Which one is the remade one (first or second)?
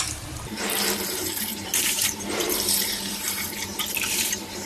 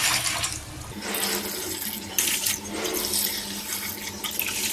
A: first